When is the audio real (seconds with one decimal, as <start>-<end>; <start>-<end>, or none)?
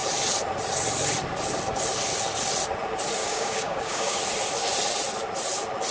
0.0-3.2; 4.2-5.9